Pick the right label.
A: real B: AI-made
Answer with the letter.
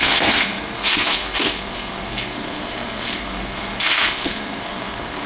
B